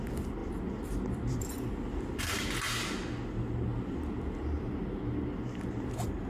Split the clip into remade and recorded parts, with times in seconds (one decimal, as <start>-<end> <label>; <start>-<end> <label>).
0.0-0.4 recorded; 0.4-2.4 remade; 2.4-3.7 recorded; 3.7-4.7 remade; 4.7-6.3 recorded